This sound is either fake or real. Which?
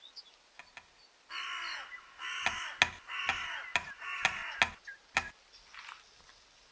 real